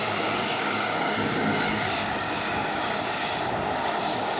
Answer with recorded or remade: remade